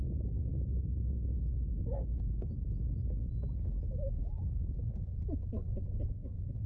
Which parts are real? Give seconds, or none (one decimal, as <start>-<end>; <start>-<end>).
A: 0.0-6.7